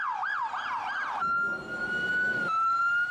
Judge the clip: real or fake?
real